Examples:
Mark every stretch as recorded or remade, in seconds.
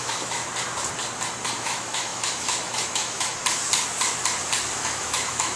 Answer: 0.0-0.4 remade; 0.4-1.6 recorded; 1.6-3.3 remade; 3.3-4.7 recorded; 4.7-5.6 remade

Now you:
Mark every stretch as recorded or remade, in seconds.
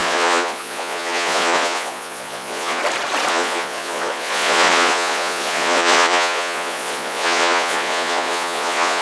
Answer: 0.0-2.8 remade; 2.8-3.3 recorded; 3.3-9.0 remade